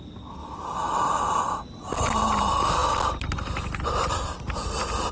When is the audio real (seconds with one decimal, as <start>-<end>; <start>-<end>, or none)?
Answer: 0.0-5.1